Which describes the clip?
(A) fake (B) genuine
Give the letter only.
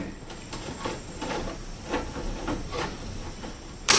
B